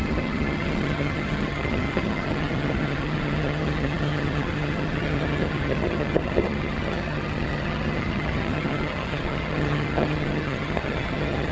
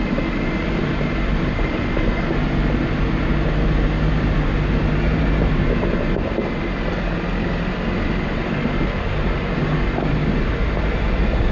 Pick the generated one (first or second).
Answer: first